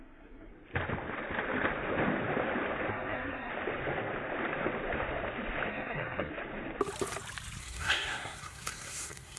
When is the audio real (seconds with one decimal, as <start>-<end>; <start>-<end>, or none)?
0.5-2.9; 3.5-5.7; 6.3-7.6